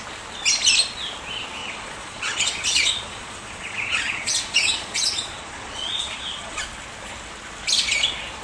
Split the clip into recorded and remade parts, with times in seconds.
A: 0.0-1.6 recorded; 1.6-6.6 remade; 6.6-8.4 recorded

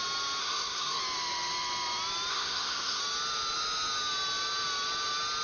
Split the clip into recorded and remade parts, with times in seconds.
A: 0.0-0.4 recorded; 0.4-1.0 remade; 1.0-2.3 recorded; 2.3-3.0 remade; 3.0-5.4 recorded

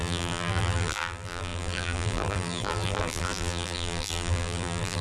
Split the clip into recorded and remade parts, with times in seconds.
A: 0.0-5.0 remade

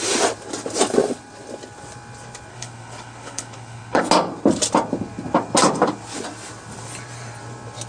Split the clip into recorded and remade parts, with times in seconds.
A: 0.0-2.5 recorded; 2.5-4.0 remade; 4.0-7.9 recorded